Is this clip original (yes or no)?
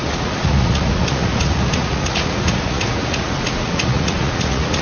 no